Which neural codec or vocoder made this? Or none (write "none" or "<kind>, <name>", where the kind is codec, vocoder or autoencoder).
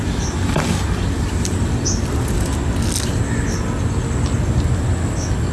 none